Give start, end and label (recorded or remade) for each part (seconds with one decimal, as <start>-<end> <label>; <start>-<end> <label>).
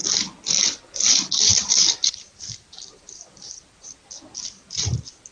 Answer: 0.0-1.5 recorded; 1.5-4.7 remade; 4.7-5.3 recorded